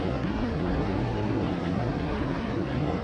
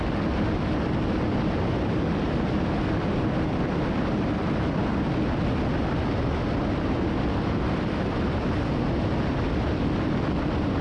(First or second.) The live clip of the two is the second